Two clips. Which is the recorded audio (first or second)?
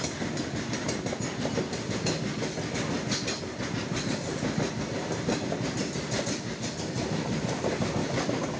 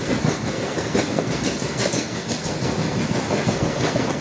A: first